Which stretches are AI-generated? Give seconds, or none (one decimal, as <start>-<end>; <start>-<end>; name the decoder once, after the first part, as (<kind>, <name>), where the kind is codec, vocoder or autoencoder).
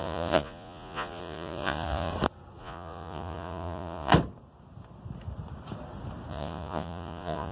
0.0-2.1 (vocoder, Vocos); 2.6-4.1; 6.3-7.5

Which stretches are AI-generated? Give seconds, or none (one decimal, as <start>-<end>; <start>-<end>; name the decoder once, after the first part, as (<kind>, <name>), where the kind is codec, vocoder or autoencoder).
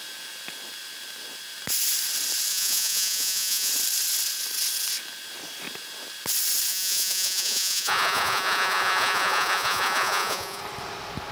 2.5-3.7 (vocoder, Vocos); 6.7-10.6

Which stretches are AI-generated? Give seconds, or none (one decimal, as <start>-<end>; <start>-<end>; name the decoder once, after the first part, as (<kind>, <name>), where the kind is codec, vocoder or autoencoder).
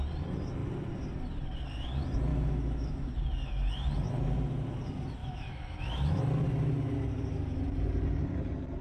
2.3-3.1 (autoencoder, DAC-VAE); 5.2-6.2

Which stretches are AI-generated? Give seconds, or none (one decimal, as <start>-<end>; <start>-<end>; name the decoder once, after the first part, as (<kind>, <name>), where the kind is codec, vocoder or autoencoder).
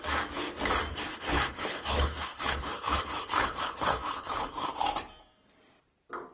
0.9-4.7 (codec, HILCodec)